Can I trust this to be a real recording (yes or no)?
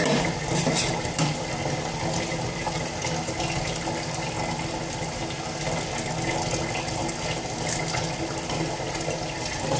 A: yes